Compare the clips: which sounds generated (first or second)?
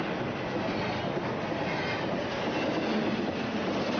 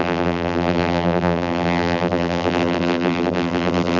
second